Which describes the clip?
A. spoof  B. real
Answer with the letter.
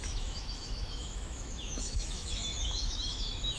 A